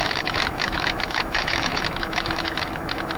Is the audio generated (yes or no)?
yes